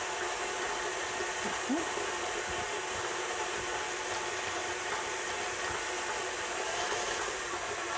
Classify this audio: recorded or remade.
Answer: recorded